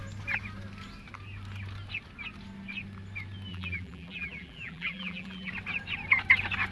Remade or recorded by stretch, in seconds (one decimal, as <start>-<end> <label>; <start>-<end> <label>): 0.0-3.5 recorded; 3.5-5.5 remade; 5.5-6.7 recorded